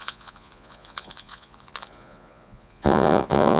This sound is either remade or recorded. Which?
remade